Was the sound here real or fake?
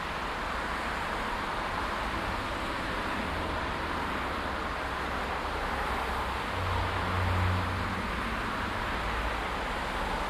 real